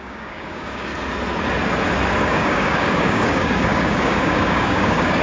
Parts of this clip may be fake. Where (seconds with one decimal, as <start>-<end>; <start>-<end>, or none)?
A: 0.0-0.9; 2.2-5.2